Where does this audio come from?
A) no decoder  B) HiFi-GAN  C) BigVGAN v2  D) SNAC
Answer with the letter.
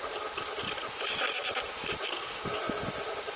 A